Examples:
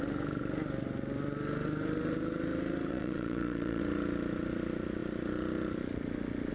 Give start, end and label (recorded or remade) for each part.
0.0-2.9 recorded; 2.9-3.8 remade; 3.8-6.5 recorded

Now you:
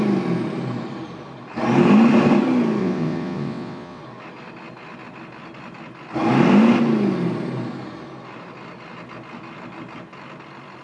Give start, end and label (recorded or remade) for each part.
0.0-2.8 recorded; 2.8-4.0 remade; 4.0-10.8 recorded